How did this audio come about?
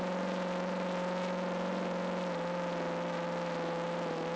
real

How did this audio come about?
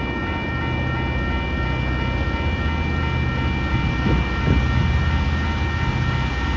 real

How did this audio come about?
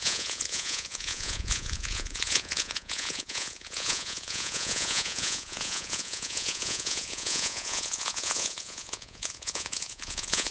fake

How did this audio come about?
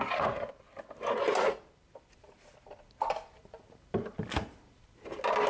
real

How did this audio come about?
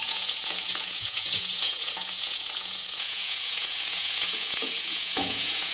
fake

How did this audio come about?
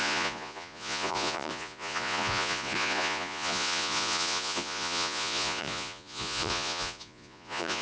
fake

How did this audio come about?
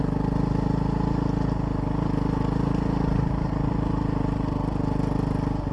real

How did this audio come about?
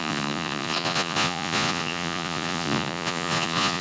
fake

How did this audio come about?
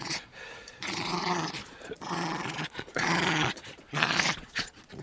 fake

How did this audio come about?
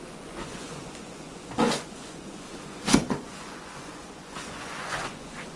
fake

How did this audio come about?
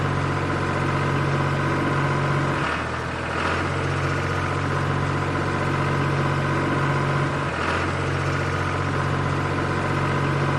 real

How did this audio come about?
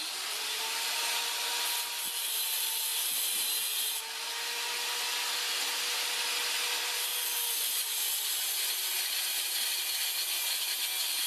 real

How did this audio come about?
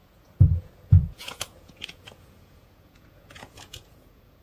fake